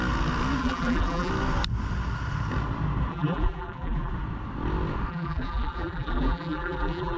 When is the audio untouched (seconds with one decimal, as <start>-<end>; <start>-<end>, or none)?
0.0-0.6; 1.3-3.1; 4.1-5.1